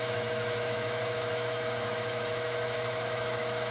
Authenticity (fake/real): fake